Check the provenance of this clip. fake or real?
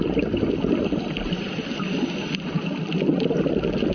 real